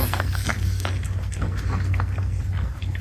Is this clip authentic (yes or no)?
no